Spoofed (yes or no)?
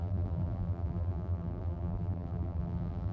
yes